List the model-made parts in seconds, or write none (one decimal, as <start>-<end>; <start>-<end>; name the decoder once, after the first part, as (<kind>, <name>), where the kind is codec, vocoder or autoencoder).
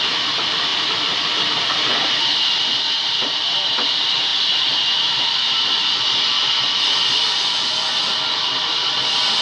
none